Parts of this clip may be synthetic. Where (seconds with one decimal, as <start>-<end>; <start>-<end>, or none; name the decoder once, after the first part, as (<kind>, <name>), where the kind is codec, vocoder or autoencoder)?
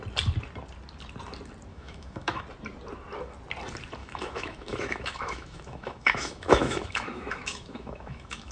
1.7-2.4 (autoencoder, DAC-VAE); 4.0-8.5